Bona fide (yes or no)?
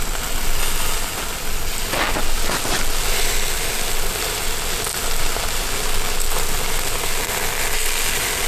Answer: yes